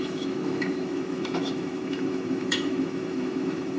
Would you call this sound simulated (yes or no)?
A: yes